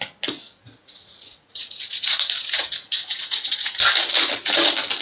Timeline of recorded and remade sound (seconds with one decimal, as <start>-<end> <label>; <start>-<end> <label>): 0.0-0.8 recorded; 0.8-3.8 remade; 3.8-5.0 recorded